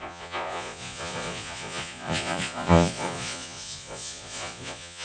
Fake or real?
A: fake